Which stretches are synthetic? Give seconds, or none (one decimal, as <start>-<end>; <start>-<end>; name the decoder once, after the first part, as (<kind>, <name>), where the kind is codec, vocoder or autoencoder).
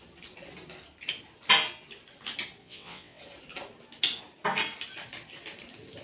2.6-3.2 (vocoder, WaveNeXt)